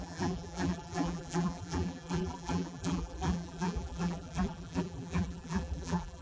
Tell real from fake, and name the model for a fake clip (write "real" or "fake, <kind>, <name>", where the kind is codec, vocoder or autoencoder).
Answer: fake, vocoder, BigVGAN v2